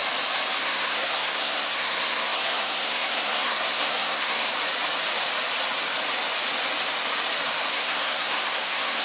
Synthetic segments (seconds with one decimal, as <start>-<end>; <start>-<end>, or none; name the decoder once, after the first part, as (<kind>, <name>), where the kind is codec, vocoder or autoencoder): 0.6-4.5 (codec, SNAC); 7.7-9.0